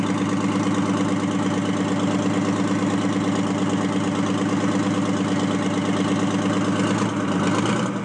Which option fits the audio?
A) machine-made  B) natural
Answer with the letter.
B